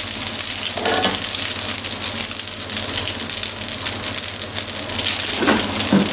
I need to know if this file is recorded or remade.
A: recorded